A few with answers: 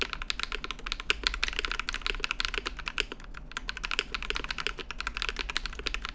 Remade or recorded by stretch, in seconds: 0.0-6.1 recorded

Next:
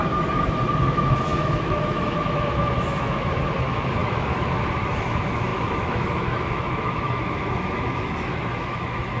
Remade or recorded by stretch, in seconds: 0.0-0.8 recorded; 0.8-9.2 remade

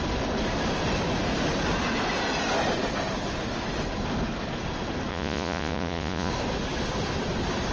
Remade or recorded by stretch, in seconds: 0.0-5.1 recorded; 5.1-6.3 remade; 6.3-7.7 recorded